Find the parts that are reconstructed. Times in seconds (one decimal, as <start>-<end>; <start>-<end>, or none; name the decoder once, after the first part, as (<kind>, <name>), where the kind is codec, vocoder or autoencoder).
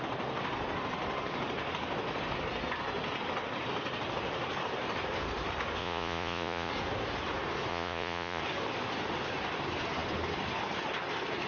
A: 5.8-6.7 (vocoder, Vocos); 7.7-8.4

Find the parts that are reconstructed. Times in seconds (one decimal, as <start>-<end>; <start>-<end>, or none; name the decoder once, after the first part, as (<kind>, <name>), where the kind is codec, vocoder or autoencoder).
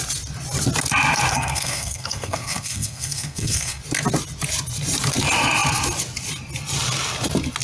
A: 1.3-3.8 (codec, SNAC)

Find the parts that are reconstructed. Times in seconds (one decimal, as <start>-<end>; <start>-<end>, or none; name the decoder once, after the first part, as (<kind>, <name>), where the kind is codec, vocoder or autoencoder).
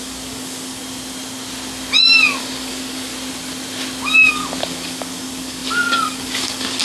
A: 0.0-0.8 (codec, DAC); 2.4-3.1; 4.3-6.8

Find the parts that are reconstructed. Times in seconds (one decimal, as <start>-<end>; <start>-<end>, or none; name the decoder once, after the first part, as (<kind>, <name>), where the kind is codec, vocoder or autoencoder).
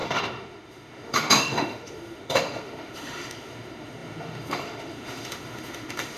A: 0.0-6.2 (autoencoder, DAC-VAE)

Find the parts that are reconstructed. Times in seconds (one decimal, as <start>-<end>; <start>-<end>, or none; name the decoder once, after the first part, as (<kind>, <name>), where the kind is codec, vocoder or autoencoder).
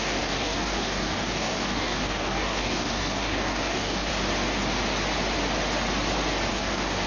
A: 0.0-4.1 (codec, DAC); 6.5-7.1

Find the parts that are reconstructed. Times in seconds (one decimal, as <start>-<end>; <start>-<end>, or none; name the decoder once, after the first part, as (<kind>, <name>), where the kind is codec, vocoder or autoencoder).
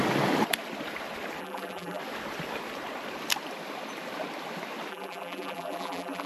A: 1.4-2.0 (vocoder, BigVGAN v2); 4.9-6.3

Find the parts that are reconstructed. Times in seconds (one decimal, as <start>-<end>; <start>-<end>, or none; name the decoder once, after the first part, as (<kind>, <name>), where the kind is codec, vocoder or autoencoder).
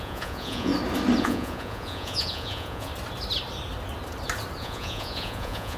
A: 0.0-0.7 (vocoder, Vocos); 1.2-2.9; 4.6-5.8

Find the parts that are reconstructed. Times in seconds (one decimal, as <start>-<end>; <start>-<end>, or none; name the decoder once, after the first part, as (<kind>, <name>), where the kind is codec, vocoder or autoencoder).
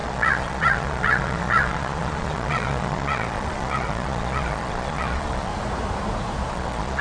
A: 0.0-5.5 (vocoder, Vocos); 6.5-7.0